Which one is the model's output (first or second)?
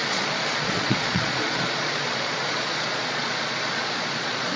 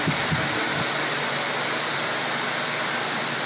first